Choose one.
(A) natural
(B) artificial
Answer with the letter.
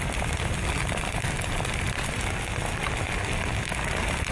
A